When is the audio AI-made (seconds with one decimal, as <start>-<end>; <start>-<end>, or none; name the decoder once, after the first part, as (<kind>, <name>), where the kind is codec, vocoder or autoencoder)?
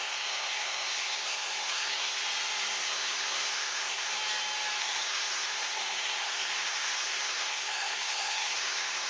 0.0-2.2 (codec, SNAC); 2.8-4.1; 4.8-9.1